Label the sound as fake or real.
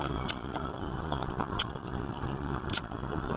fake